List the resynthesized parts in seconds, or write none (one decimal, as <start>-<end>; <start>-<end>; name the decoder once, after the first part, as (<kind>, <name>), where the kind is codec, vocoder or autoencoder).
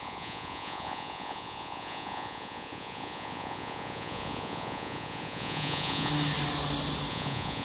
0.0-6.1 (vocoder, Vocos); 7.1-7.6